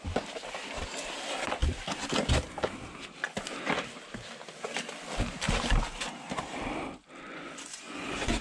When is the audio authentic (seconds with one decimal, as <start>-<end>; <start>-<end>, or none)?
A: 0.0-7.3